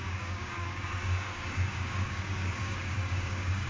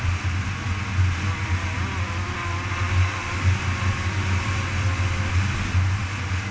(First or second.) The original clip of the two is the second